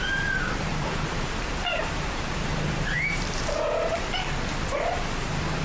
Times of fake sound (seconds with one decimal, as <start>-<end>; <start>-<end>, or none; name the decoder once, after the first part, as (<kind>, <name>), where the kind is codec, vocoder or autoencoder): 0.7-4.1 (vocoder, BigVGAN v2)